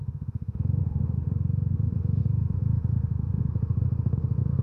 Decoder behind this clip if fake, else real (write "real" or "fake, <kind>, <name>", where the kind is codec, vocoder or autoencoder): fake, autoencoder, DAC-VAE